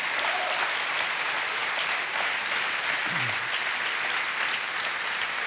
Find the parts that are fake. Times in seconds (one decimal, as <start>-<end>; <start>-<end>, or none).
none